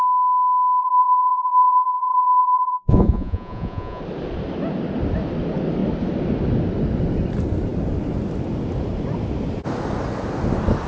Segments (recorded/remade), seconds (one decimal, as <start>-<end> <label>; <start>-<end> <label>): 0.0-0.8 recorded; 0.8-4.0 remade; 4.0-10.9 recorded